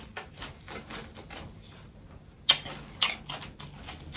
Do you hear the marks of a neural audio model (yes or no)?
no